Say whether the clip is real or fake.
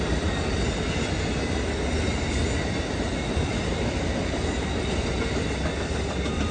real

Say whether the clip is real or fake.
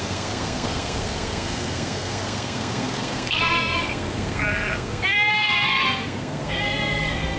fake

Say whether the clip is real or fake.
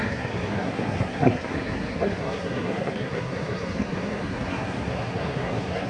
fake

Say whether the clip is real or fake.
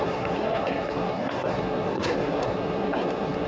fake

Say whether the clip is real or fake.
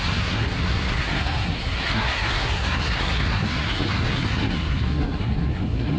fake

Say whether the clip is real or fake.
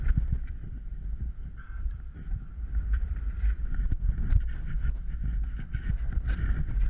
real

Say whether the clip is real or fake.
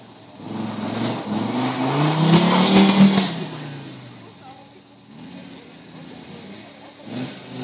real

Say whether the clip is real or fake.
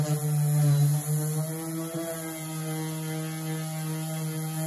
real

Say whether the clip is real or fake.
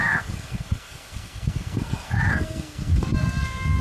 fake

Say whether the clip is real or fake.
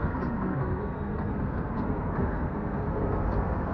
fake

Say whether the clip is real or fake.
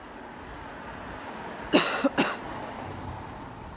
real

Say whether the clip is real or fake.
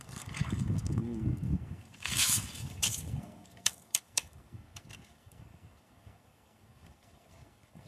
fake